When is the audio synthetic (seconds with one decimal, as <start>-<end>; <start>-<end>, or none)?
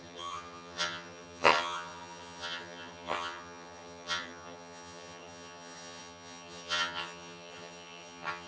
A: 0.0-8.5